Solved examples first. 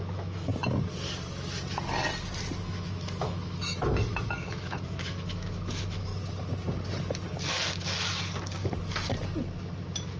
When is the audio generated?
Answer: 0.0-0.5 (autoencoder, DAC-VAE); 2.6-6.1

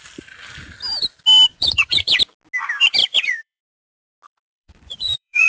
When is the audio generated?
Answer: 1.5-2.2 (vocoder, Vocos); 3.0-3.6; 4.3-5.5

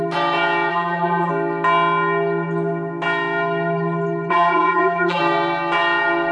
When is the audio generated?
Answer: 0.7-1.3 (vocoder, BigVGAN v2); 4.3-5.2

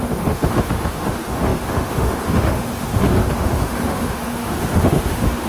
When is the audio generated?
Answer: 0.0-5.5 (autoencoder, DAC-VAE)

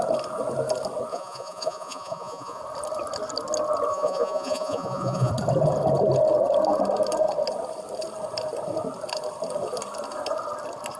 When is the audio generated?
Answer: 1.1-2.6 (vocoder, Vocos); 3.9-5.3

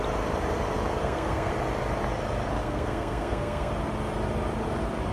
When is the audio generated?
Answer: 1.0-1.5 (codec, SNAC); 2.6-3.7

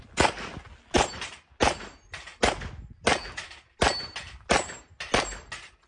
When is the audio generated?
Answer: none

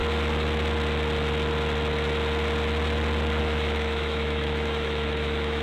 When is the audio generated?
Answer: 3.4-5.6 (autoencoder, DAC-VAE)